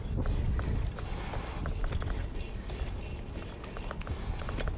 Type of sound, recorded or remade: recorded